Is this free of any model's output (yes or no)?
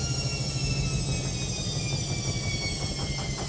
yes